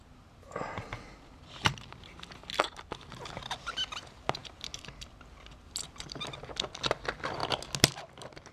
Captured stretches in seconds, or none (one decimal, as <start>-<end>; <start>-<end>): 0.0-8.5